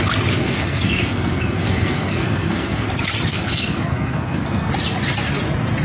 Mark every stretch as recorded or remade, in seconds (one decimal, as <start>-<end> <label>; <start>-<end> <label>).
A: 0.0-0.4 recorded; 0.4-2.9 remade; 2.9-3.3 recorded; 3.3-4.7 remade; 4.7-5.8 recorded